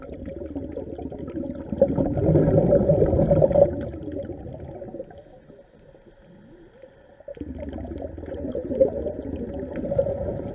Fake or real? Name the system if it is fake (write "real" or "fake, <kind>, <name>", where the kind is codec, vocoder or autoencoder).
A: real